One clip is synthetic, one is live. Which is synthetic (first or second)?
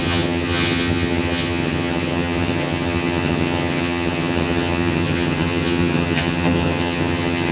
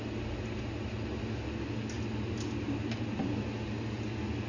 first